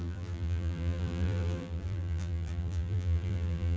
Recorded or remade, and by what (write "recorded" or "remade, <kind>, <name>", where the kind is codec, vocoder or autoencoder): remade, vocoder, BigVGAN v2